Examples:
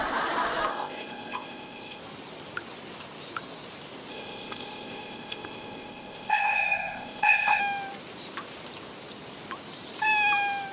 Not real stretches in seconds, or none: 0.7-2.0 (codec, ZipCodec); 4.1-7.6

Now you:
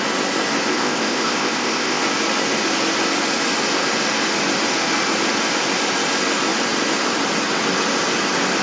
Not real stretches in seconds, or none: 0.7-2.0 (codec, ZipCodec)

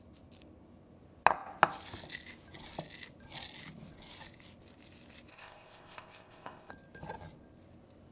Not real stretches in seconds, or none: 5.3-6.7 (codec, ZipCodec)